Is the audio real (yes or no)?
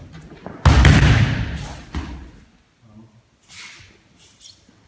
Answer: yes